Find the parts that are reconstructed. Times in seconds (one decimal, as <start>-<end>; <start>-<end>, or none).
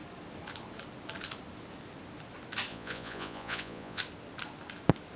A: 2.7-4.0